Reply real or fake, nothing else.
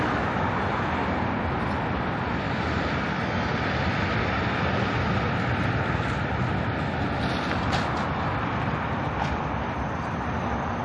real